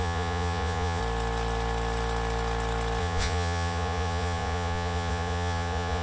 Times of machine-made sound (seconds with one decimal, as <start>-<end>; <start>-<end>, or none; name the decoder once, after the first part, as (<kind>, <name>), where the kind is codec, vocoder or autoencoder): 0.0-1.0 (vocoder, Vocos); 3.0-6.0